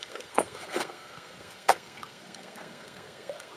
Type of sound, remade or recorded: remade